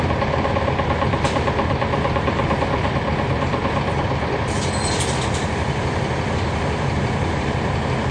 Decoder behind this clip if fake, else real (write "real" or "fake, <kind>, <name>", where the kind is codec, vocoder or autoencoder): real